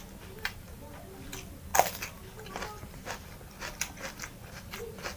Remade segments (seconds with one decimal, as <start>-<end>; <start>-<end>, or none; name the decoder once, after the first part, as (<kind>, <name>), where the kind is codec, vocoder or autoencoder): none